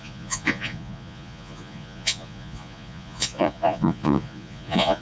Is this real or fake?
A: fake